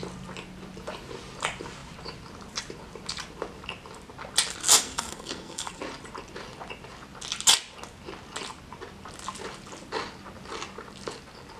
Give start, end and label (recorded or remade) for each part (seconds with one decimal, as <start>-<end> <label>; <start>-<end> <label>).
0.0-4.6 recorded; 4.6-5.8 remade; 5.8-11.6 recorded